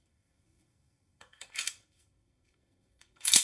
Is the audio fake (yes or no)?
yes